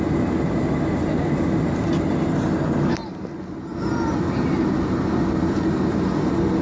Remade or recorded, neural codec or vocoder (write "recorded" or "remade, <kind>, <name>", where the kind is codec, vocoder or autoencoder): recorded